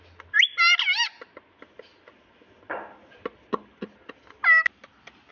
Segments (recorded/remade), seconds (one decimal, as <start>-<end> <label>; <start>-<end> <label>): 0.0-5.3 recorded